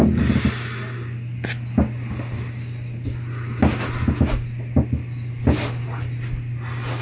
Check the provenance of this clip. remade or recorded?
recorded